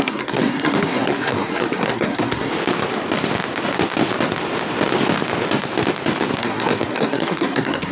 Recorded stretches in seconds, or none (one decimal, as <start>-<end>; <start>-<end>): 2.5-6.4